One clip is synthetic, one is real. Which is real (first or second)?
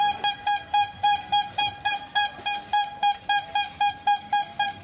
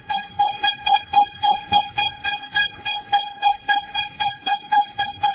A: first